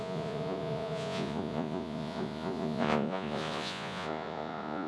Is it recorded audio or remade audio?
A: remade